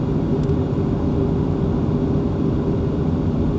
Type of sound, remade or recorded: recorded